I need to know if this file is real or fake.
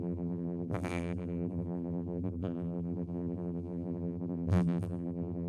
fake